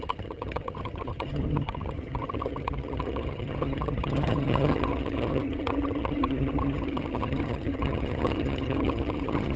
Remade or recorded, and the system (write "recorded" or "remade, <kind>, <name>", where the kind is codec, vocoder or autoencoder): remade, vocoder, HiFi-GAN